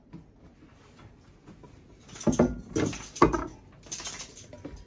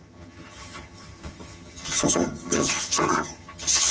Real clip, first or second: first